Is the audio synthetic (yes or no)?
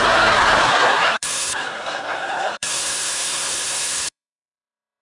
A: yes